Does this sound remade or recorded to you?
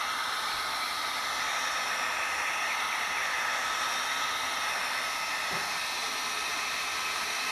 recorded